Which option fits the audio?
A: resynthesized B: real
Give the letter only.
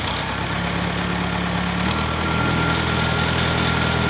B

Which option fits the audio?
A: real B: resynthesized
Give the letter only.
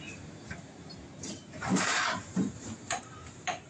B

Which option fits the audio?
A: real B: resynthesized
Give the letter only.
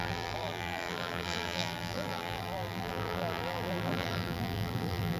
B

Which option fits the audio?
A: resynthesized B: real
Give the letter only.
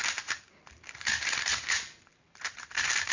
A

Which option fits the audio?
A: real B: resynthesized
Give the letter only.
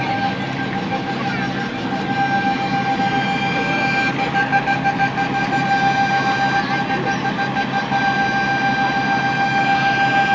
A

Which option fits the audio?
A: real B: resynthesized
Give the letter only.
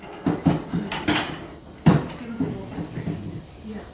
B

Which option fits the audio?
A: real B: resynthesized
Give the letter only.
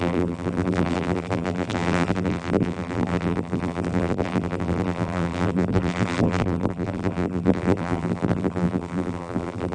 B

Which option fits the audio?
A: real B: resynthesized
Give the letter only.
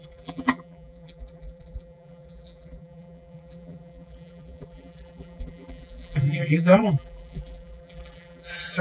B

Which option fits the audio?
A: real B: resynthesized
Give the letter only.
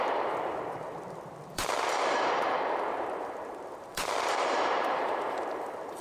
B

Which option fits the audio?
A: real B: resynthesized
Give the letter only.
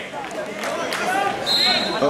A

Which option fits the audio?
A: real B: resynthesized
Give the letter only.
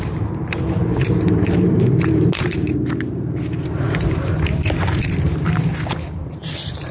B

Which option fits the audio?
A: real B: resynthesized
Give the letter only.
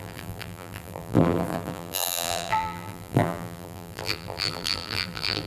B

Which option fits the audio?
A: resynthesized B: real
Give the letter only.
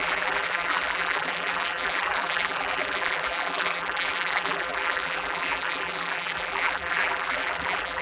A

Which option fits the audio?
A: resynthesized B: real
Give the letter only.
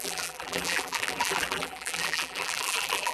A